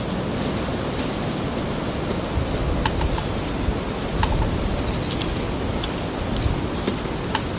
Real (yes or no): yes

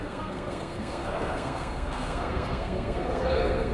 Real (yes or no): no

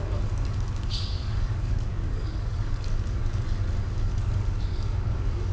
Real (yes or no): no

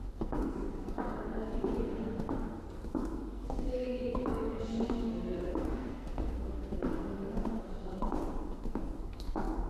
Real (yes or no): no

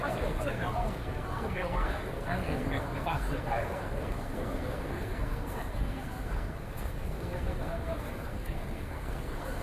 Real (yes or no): no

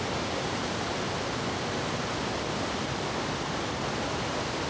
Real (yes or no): yes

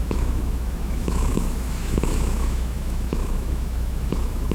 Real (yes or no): no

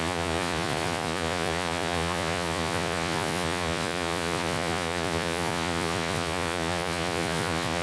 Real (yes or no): no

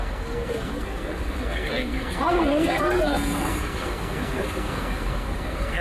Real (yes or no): no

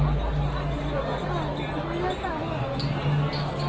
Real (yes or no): yes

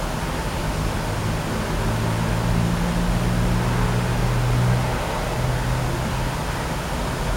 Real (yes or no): yes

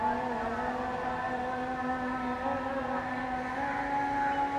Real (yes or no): yes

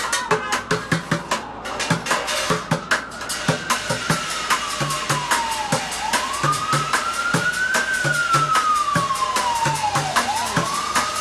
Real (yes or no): yes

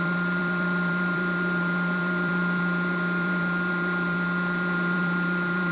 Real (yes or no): no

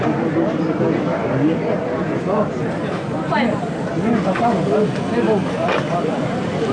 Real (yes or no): yes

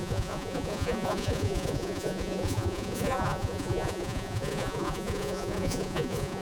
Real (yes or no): no